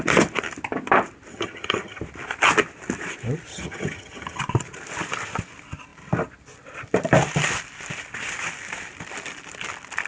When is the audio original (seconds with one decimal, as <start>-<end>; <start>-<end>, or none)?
0.0-1.3; 2.0-3.5; 4.4-10.1